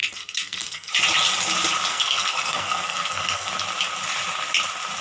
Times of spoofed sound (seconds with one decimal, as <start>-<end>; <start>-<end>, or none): 0.0-0.9; 1.9-3.5